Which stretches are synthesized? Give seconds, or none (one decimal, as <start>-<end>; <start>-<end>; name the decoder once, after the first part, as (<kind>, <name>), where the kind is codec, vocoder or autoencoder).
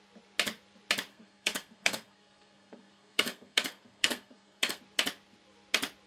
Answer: 1.1-4.8 (codec, SNAC)